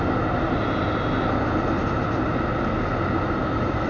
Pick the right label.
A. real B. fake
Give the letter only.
A